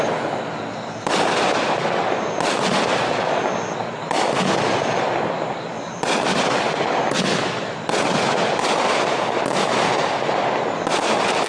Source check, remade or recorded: recorded